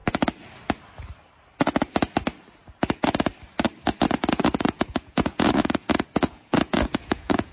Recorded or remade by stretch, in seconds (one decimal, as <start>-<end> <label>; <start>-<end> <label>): 0.0-4.3 recorded; 4.3-7.5 remade

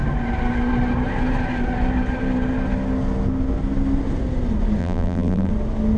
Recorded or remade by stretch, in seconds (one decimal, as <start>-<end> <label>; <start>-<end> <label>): 0.0-4.8 recorded; 4.8-5.5 remade; 5.5-6.0 recorded

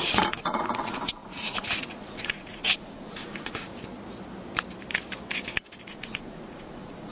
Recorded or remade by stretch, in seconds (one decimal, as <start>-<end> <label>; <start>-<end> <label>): 0.0-3.7 remade; 3.7-5.9 recorded; 5.9-7.1 remade